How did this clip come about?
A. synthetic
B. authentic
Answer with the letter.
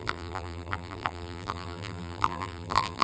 A